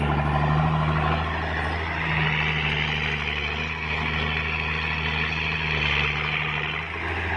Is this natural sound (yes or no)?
yes